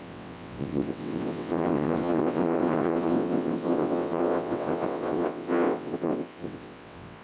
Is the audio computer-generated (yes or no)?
yes